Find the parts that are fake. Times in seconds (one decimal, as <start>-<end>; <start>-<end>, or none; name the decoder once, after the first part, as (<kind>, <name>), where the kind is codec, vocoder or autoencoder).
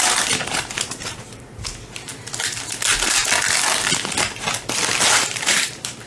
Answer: 0.0-2.1 (vocoder, BigVGAN v2); 5.1-6.1